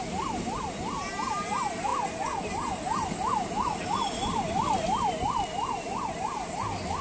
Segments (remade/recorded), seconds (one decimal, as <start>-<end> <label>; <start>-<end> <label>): 0.0-7.0 recorded